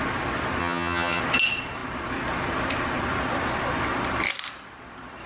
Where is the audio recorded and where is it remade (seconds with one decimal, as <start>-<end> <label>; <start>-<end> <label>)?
0.0-0.6 recorded; 0.6-1.2 remade; 1.2-5.3 recorded